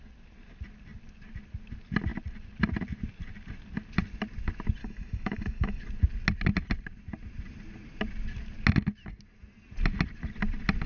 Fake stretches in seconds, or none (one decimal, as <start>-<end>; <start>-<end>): 4.8-5.8